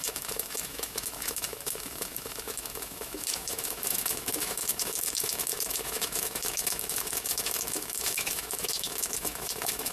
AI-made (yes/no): yes